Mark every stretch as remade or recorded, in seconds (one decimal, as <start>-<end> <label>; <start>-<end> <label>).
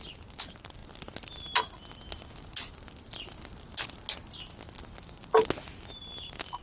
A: 0.0-6.6 recorded